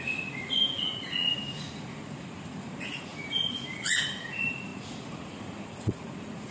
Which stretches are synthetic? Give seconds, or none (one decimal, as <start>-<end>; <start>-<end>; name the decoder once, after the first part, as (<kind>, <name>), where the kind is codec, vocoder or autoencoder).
0.0-6.5 (vocoder, Vocos)